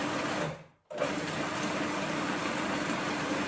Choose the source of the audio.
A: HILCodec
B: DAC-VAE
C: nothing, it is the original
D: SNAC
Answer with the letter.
C